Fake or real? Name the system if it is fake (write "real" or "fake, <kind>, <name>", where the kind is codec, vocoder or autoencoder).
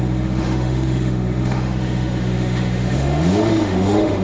fake, autoencoder, DAC-VAE